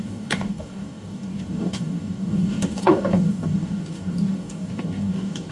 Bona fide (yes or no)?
no